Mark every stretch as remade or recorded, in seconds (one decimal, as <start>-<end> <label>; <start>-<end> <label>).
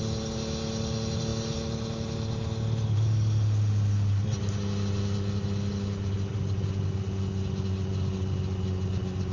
0.0-9.3 recorded